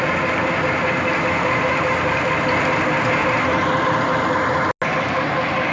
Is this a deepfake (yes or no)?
no